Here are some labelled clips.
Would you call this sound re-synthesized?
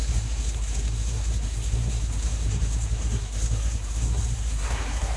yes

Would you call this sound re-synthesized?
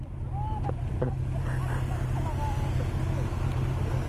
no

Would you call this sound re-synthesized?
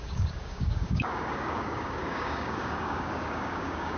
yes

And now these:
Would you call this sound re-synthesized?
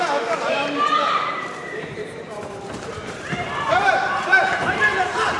yes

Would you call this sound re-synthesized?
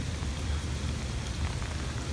no